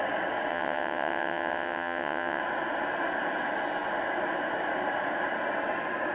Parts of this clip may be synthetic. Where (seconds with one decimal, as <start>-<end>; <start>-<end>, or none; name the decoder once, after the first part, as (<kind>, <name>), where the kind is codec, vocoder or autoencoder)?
0.5-2.4 (vocoder, WaveNeXt)